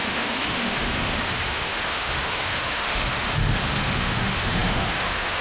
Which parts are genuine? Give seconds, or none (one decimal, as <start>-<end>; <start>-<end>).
none